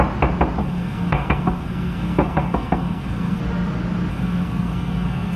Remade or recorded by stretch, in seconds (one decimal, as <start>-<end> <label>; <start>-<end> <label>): 0.0-0.6 recorded; 0.6-3.4 remade; 3.4-4.1 recorded; 4.1-5.4 remade